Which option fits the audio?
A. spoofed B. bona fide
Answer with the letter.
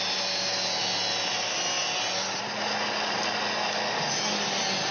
B